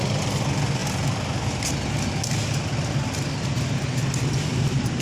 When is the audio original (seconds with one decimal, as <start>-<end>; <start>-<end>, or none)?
0.0-5.0